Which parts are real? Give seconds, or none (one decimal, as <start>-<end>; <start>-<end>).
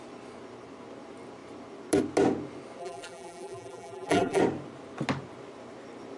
0.0-2.8; 4.4-6.2